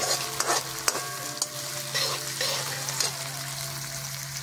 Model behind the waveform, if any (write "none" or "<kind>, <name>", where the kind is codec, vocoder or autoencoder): none